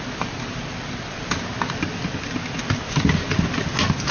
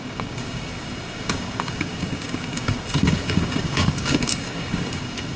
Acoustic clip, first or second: first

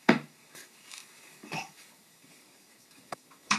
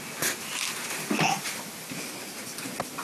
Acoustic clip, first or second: second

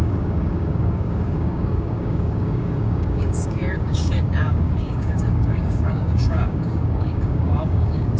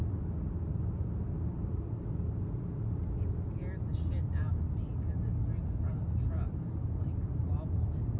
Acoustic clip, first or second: second